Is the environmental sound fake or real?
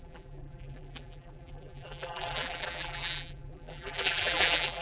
fake